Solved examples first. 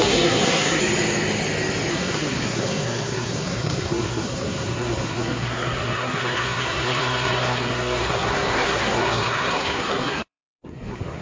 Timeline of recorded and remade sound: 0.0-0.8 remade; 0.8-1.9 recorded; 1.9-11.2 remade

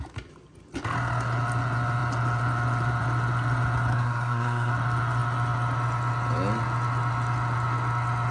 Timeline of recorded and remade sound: 0.0-3.9 recorded; 3.9-4.7 remade; 4.7-8.3 recorded